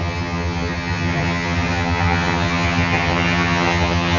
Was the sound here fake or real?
fake